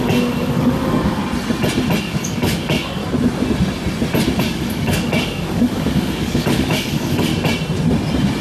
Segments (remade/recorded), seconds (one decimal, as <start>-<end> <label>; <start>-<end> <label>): 0.0-1.2 remade; 1.2-2.0 recorded; 2.0-3.0 remade; 3.0-4.4 recorded; 4.4-7.3 remade; 7.3-8.4 recorded